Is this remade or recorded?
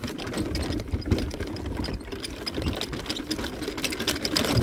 recorded